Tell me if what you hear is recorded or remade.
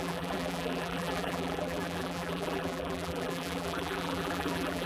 remade